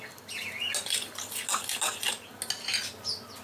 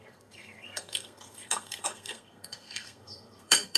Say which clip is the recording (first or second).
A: first